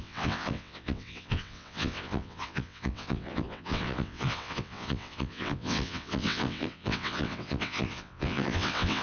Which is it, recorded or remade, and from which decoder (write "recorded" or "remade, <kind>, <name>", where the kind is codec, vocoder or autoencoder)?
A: remade, vocoder, WaveNeXt